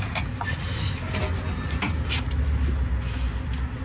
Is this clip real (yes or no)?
yes